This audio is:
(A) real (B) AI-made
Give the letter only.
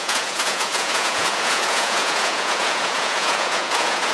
B